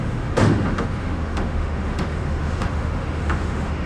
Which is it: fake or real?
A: fake